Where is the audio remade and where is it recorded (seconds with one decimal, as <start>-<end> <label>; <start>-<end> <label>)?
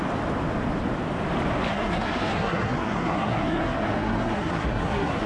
0.0-1.7 recorded; 1.7-5.3 remade